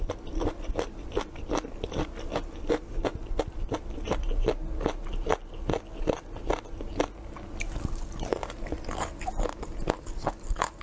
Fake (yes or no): no